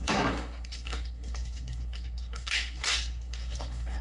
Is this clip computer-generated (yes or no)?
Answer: yes